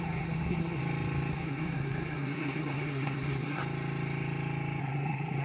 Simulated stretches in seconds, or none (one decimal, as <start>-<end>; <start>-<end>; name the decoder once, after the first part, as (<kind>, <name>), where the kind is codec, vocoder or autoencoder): 0.0-0.8 (codec, SNAC); 1.3-3.6; 4.8-5.4